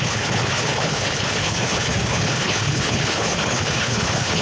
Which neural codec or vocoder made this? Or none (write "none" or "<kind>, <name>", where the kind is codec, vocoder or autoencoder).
codec, HILCodec